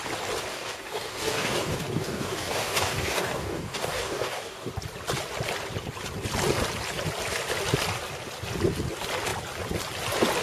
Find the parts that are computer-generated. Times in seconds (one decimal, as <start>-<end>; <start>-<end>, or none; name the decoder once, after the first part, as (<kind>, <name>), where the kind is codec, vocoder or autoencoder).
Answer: 0.5-4.7 (codec, DAC)